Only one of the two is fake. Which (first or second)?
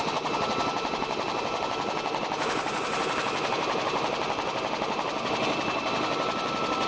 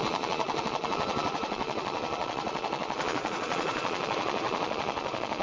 second